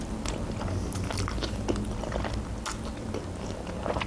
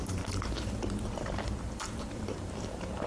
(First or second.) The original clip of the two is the first